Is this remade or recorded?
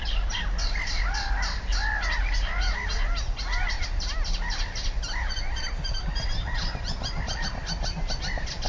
recorded